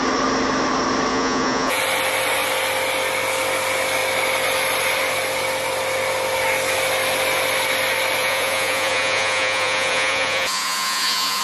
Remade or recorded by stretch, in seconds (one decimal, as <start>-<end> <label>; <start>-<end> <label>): 0.0-1.1 recorded; 1.1-1.8 remade; 1.8-8.2 recorded; 8.2-11.4 remade